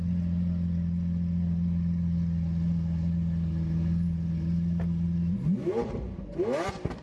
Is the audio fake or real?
real